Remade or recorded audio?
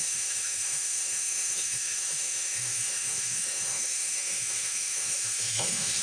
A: remade